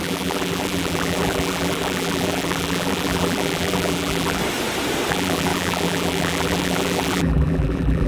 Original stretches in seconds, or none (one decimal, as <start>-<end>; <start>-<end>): 4.4-5.1